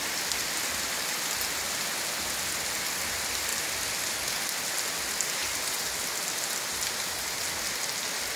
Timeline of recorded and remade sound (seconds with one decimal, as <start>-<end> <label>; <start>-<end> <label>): 0.0-8.4 recorded